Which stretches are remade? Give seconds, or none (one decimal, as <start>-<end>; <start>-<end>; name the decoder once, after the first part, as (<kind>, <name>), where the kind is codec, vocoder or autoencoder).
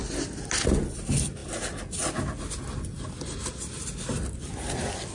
none